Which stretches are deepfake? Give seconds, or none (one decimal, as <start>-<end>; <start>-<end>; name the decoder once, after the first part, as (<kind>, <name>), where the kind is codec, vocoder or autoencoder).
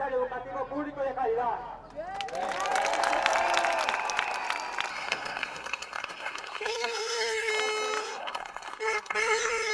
4.9-7.5 (codec, SNAC); 8.0-9.7